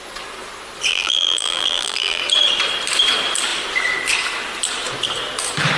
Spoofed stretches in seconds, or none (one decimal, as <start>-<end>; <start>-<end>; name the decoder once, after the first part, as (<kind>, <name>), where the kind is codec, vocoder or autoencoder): 0.9-2.2 (vocoder, BigVGAN v2)